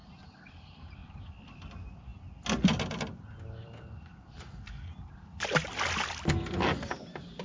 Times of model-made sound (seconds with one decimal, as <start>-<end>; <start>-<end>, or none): none